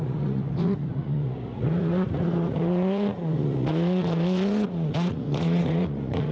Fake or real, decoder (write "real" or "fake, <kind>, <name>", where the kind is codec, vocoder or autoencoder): fake, vocoder, Vocos